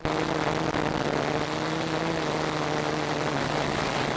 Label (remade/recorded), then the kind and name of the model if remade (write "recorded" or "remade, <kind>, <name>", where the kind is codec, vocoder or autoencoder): recorded